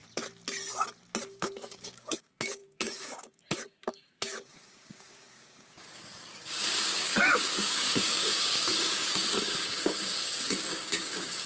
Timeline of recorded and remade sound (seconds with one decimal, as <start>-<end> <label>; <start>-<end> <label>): 0.0-1.2 recorded; 1.2-11.5 remade